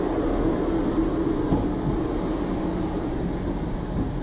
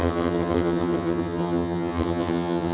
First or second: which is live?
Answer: first